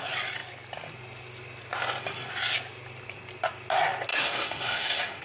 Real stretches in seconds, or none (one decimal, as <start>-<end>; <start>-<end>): 0.0-4.1